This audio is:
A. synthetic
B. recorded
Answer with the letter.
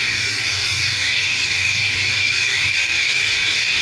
A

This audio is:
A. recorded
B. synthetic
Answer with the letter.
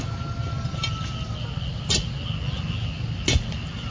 A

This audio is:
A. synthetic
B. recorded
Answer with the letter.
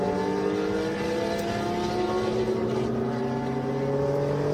B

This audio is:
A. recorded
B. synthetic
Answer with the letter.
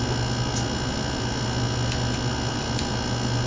A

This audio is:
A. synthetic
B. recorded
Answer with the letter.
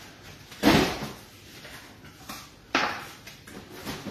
B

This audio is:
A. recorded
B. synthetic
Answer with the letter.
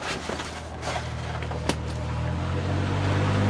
A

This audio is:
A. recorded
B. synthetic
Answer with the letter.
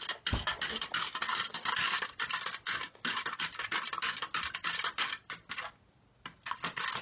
A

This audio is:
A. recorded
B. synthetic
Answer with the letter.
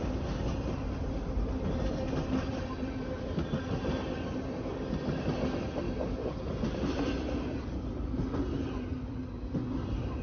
A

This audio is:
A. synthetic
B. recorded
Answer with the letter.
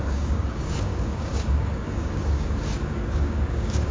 A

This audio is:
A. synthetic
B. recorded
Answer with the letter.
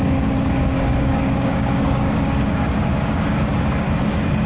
A